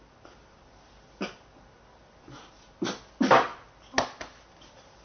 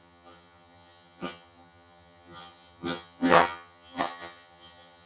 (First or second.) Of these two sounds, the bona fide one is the first